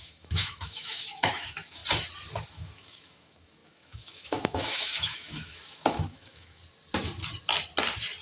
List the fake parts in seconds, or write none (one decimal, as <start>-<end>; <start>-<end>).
0.0-1.8; 2.5-6.6